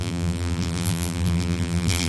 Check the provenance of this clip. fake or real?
fake